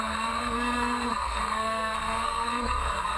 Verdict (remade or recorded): remade